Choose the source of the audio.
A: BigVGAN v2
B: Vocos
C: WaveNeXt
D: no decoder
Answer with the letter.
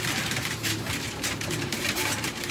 A